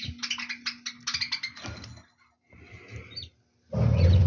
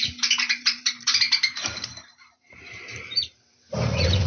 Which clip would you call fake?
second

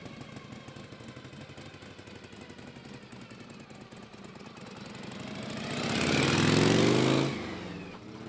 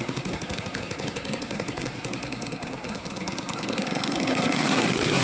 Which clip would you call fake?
second